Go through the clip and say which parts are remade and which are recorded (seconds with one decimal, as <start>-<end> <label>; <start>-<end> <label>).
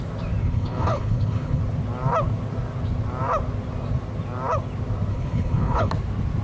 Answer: 0.0-0.4 recorded; 0.4-1.6 remade; 1.6-5.1 recorded; 5.1-5.9 remade; 5.9-6.4 recorded